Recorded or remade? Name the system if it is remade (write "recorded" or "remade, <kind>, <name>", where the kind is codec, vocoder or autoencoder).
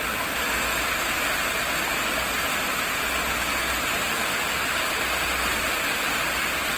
recorded